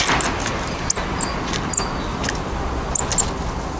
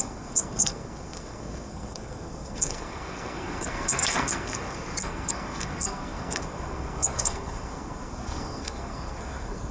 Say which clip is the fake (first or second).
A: second